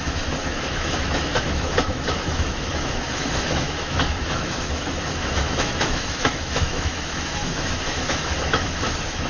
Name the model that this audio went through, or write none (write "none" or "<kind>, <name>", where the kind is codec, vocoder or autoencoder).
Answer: autoencoder, DAC-VAE